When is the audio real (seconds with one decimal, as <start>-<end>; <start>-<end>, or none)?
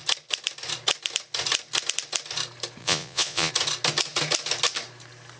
0.0-2.8; 3.5-5.4